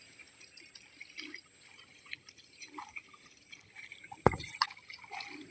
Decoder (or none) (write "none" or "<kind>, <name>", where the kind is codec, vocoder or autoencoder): none